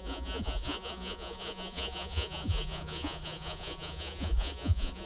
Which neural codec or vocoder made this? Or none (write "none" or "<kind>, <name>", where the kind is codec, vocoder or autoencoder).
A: vocoder, Vocos